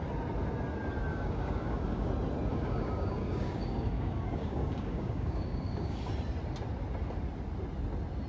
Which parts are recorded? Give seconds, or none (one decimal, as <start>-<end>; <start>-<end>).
0.0-1.1; 2.1-2.5; 6.1-8.3